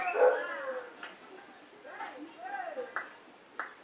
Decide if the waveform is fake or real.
real